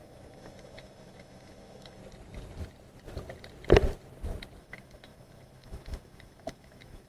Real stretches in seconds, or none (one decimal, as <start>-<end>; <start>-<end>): 2.0-4.6

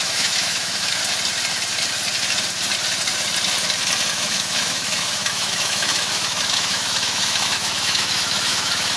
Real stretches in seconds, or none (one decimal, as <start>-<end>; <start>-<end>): 1.0-4.1

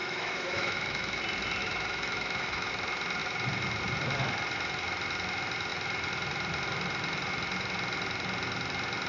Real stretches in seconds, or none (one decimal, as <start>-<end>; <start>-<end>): 1.2-1.6; 2.7-9.1

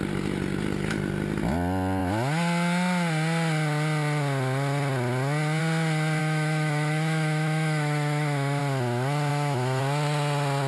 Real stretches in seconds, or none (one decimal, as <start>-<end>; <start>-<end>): 0.0-6.2; 8.6-9.3; 9.8-10.7

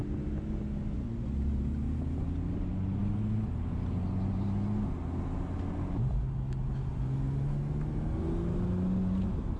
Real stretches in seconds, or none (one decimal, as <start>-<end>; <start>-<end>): 0.0-9.6

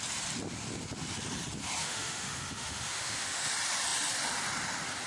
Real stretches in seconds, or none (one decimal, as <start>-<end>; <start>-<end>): 0.0-1.8; 3.5-5.1